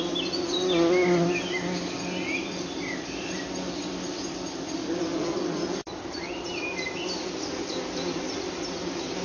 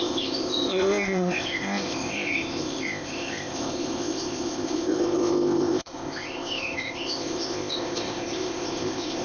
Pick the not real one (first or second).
second